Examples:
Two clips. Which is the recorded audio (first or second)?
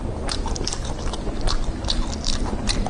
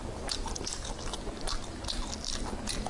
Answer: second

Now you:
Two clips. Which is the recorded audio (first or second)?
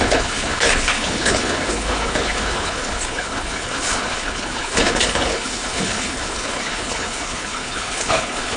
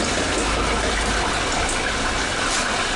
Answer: second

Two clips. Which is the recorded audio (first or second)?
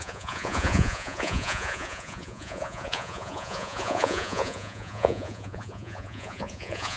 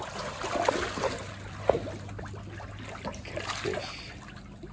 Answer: second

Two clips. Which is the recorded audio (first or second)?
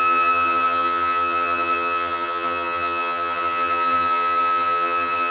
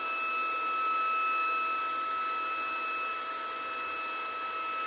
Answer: second